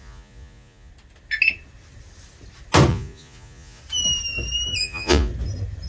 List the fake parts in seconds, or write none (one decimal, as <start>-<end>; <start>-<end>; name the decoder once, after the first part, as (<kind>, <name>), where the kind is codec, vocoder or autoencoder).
0.0-0.9 (vocoder, Vocos); 2.9-3.8; 4.8-5.3